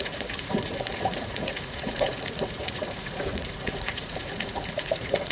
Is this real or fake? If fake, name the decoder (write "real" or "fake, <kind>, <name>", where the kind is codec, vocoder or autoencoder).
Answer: fake, vocoder, Vocos